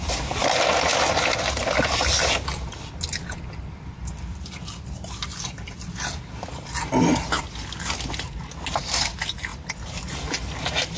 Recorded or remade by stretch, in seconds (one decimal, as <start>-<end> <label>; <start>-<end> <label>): 0.0-11.0 recorded